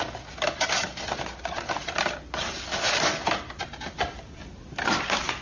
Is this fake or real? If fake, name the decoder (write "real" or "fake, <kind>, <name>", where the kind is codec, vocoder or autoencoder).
real